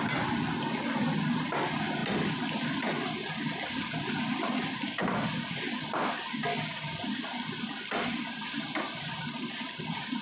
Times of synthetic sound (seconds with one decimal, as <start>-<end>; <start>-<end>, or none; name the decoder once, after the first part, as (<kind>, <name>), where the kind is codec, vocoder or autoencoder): none